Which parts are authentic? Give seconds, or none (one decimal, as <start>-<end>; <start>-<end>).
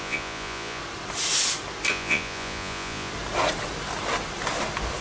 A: 0.8-1.9; 3.1-5.0